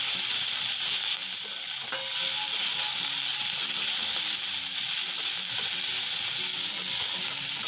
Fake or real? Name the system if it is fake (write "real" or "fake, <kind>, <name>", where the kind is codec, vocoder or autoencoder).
real